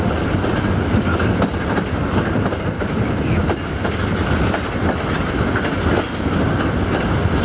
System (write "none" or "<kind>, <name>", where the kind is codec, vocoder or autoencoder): none